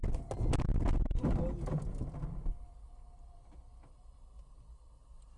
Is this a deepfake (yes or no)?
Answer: no